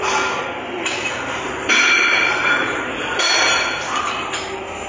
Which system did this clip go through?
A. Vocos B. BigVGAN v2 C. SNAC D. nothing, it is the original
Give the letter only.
D